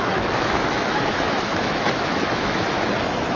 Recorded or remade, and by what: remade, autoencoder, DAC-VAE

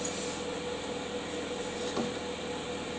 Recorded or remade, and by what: recorded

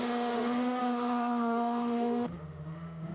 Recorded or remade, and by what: remade, autoencoder, DAC-VAE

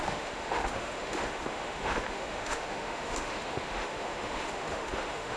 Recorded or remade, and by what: remade, autoencoder, DAC-VAE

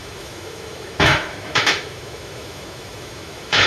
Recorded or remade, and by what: remade, autoencoder, DAC-VAE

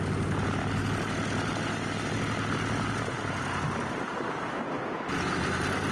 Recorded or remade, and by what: recorded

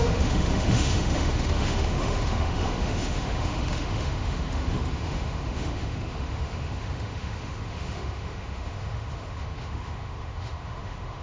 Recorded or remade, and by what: remade, autoencoder, DAC-VAE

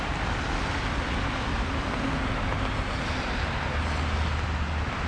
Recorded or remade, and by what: recorded